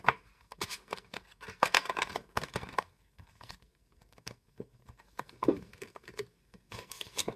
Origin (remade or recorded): remade